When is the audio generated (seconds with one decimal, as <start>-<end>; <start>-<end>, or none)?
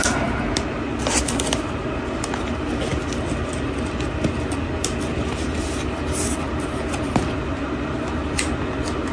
none